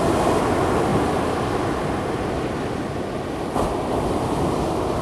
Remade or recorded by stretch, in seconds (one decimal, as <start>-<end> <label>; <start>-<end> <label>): 0.0-5.0 recorded